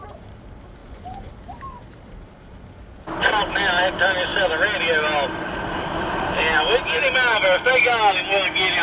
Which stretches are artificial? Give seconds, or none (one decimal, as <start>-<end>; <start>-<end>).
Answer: 0.8-1.3